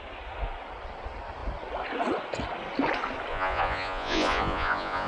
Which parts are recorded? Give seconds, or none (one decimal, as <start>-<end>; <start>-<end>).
0.0-3.3